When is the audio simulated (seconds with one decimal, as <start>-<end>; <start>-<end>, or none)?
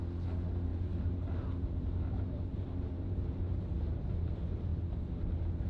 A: 0.7-4.1